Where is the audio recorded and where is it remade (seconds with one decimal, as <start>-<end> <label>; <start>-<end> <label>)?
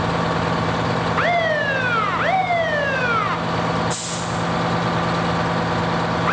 0.0-6.3 recorded